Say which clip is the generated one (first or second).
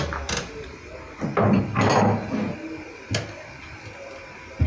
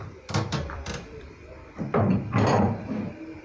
second